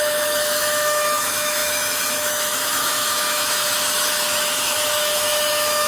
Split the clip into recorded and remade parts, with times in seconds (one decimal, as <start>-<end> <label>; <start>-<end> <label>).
0.0-5.9 remade